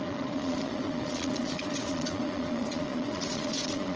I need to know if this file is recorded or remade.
remade